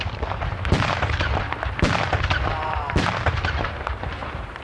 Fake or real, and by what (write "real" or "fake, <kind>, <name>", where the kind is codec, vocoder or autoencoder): fake, vocoder, BigVGAN v2